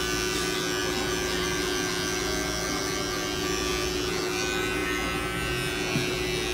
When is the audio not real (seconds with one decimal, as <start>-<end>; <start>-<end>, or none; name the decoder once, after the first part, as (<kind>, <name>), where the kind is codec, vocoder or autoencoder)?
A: none